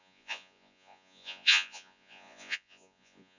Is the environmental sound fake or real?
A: fake